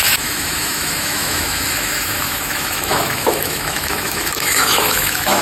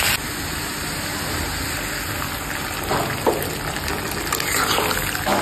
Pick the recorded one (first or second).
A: second